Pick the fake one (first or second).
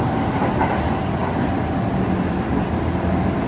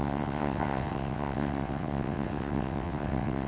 second